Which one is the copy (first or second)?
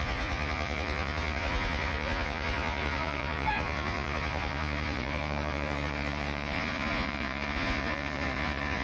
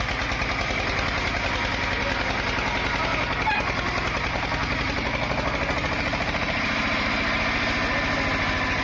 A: first